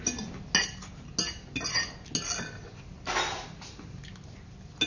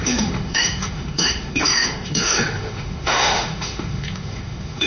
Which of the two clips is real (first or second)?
first